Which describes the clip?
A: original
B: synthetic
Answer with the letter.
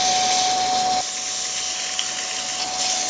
A